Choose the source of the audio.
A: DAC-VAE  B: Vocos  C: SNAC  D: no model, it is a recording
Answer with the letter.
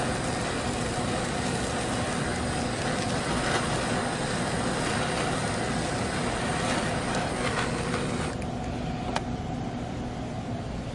D